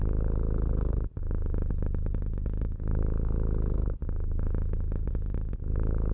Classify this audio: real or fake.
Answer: real